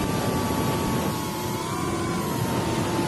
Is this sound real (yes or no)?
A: yes